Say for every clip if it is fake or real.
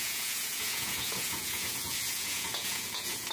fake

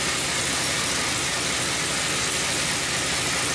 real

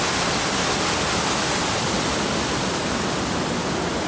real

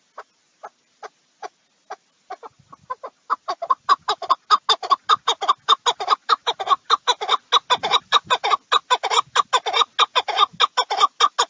real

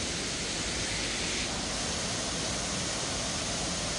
real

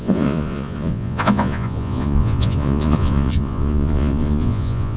fake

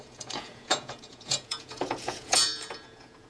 fake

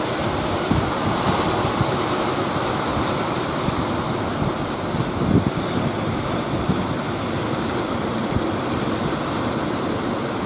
real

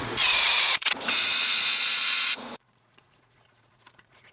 fake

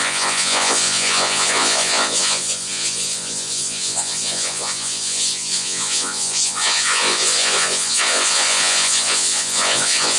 fake